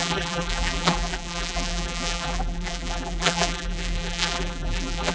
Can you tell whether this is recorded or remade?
remade